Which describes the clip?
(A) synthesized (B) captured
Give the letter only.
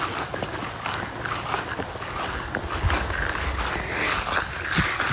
B